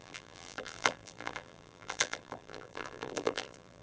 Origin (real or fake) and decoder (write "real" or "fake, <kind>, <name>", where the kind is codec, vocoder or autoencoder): fake, vocoder, BigVGAN v2